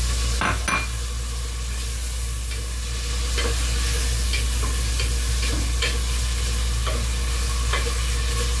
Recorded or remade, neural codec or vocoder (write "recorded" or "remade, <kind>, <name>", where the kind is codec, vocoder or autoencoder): recorded